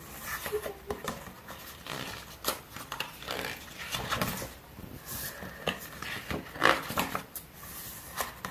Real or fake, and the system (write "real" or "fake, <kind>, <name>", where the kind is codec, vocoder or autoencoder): fake, vocoder, BigVGAN v2